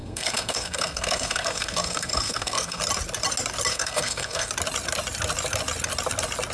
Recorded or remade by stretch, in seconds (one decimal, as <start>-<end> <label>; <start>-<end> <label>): 0.0-2.8 remade; 2.8-3.7 recorded; 3.7-4.5 remade; 4.5-6.5 recorded